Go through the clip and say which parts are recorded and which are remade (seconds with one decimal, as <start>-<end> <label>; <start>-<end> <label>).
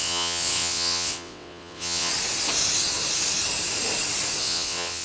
0.0-2.1 remade; 2.1-4.4 recorded; 4.4-5.0 remade